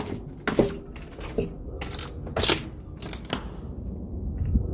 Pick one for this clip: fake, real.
real